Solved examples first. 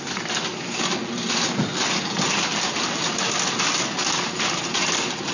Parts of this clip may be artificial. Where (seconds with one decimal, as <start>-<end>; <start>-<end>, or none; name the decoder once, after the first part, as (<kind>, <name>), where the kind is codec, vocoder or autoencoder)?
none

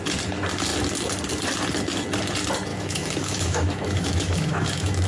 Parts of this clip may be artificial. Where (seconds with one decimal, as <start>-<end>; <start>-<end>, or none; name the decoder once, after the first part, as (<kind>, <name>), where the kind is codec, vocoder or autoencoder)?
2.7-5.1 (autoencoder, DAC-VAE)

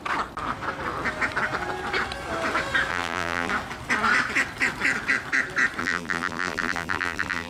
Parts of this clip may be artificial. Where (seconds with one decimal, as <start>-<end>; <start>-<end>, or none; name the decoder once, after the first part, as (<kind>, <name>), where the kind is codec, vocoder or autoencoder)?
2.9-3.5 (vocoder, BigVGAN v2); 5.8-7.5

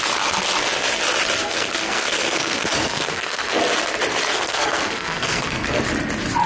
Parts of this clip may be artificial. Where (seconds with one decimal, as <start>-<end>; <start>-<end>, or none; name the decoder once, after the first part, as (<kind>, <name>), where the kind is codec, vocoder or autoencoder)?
1.4-3.6 (codec, SNAC); 4.3-5.8

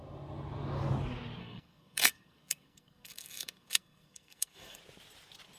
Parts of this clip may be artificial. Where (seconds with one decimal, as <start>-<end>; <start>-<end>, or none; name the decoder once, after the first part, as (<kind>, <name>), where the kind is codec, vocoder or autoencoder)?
1.4-4.8 (codec, SNAC)

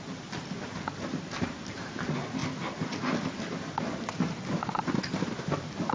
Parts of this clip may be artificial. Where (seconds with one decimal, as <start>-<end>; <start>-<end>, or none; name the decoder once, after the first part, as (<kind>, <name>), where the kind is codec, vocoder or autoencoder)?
none